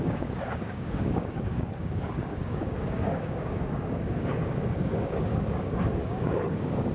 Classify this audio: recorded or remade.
remade